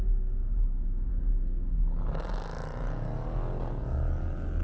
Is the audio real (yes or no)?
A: yes